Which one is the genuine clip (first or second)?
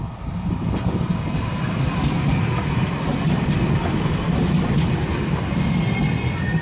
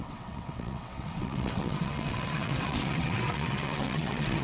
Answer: first